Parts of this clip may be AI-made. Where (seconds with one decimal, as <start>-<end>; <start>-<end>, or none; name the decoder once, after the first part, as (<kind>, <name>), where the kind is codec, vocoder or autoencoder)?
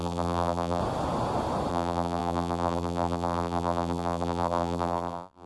0.0-0.8 (vocoder, BigVGAN v2); 1.7-5.5